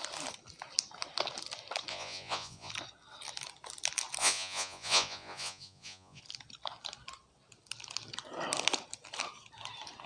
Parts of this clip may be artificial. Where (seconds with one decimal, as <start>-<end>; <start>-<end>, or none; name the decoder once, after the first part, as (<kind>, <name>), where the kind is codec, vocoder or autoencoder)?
1.9-2.7 (vocoder, Vocos); 4.2-6.2